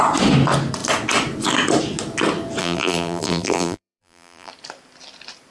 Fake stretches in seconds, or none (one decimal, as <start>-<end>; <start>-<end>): 2.6-4.5